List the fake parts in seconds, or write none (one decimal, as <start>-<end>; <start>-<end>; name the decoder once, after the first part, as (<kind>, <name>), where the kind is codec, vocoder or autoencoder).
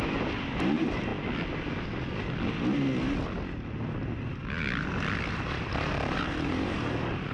0.0-1.1 (vocoder, BigVGAN v2); 5.5-7.3